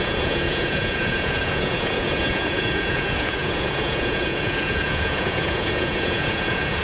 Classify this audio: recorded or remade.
remade